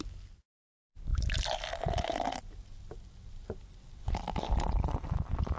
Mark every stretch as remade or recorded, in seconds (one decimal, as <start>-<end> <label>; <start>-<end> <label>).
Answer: 0.0-5.6 recorded